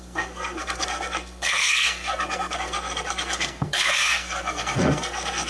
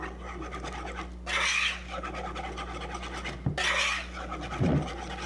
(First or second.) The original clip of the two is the second